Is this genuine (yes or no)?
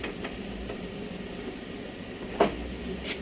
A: yes